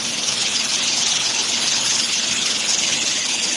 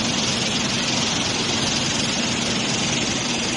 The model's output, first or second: first